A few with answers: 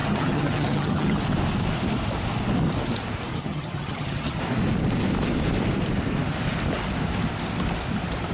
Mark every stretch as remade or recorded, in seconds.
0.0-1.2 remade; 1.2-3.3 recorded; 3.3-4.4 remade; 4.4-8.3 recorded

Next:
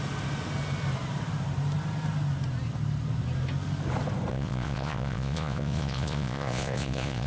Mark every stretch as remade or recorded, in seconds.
0.0-4.3 recorded; 4.3-7.3 remade

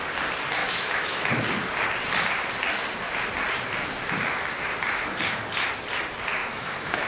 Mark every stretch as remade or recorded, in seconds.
0.0-0.6 recorded; 0.6-1.4 remade; 1.4-6.4 recorded; 6.4-7.1 remade